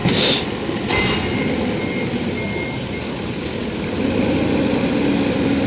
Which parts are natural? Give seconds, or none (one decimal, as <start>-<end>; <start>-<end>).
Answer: 0.0-5.7

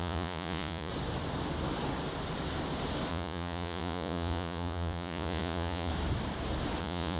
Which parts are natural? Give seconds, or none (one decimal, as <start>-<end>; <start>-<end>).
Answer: 0.9-3.1; 5.9-6.8

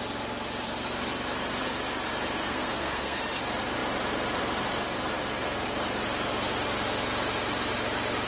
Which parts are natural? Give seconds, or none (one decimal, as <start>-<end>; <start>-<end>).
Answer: 0.0-2.4; 3.2-8.3

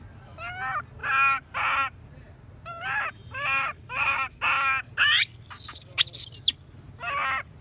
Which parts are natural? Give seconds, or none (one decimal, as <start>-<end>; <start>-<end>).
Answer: 0.0-2.7; 4.3-7.6

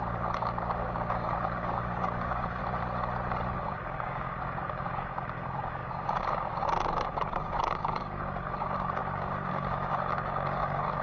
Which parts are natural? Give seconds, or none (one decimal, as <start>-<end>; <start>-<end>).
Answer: 2.6-3.6